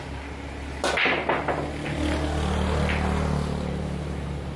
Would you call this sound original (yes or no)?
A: yes